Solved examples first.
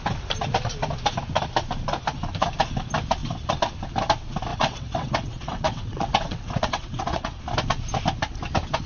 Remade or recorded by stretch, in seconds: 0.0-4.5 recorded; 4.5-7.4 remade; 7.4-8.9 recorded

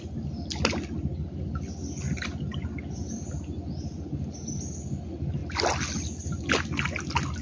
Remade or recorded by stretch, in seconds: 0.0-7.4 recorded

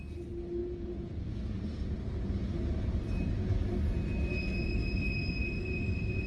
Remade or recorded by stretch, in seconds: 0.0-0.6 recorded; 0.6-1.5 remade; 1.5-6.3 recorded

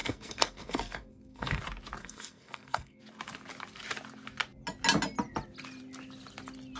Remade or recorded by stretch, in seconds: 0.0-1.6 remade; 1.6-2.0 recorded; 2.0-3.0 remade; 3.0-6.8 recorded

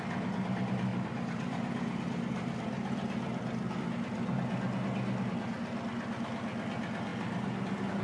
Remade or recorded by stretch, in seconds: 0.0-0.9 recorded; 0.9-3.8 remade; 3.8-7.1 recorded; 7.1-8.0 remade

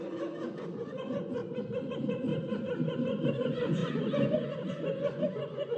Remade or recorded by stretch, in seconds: 0.0-1.4 remade; 1.4-1.9 recorded; 1.9-2.3 remade; 2.3-3.3 recorded; 3.3-5.8 remade

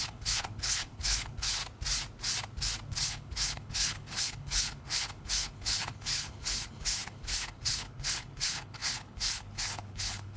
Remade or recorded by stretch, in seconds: 0.0-1.6 remade; 1.6-2.9 recorded; 2.9-10.4 remade